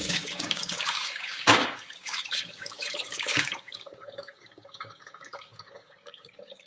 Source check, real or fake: fake